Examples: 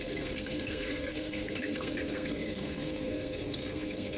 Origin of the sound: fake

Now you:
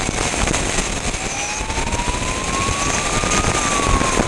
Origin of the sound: real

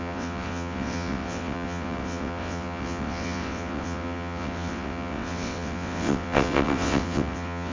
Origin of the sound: fake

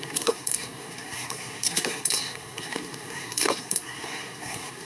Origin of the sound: fake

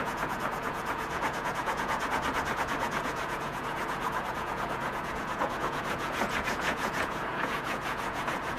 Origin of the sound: fake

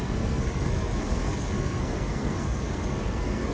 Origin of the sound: fake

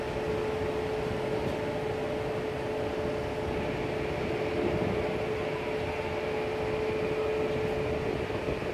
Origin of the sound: real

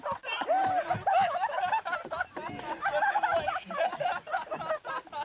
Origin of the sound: real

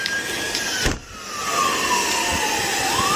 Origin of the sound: real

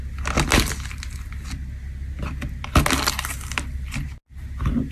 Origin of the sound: real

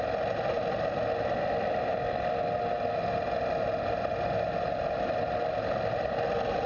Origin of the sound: real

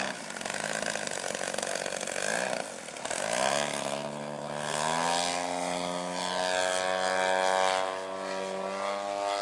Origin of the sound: real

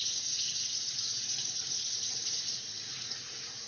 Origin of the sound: fake